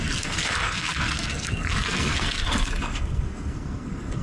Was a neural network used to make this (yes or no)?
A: yes